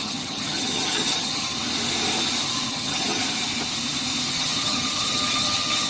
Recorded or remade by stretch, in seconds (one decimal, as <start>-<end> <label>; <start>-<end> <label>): 0.0-1.5 remade; 1.5-2.7 recorded; 2.7-3.2 remade; 3.2-4.3 recorded; 4.3-5.9 remade